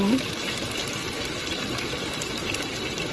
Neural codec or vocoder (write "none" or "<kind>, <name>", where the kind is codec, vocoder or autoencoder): none